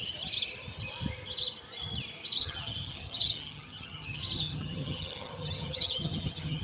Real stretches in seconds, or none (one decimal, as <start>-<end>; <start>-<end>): 0.0-2.4

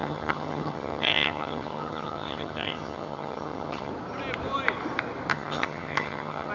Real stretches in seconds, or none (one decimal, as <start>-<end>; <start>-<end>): 3.9-5.3

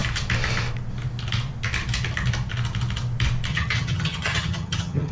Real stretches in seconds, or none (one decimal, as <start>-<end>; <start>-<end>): 0.0-3.5

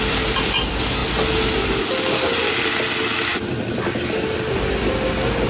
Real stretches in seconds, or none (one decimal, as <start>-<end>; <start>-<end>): 0.0-5.5